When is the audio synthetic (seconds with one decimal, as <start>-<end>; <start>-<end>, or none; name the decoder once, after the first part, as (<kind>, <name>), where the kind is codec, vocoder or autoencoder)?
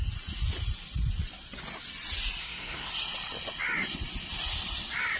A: 2.4-2.9 (codec, SNAC)